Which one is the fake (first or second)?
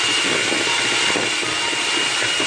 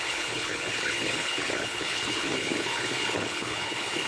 second